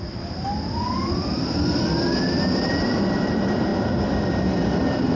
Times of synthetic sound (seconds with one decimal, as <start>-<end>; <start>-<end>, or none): none